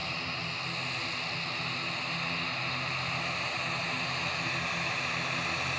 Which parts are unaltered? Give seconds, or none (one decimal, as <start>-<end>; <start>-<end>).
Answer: 0.0-5.8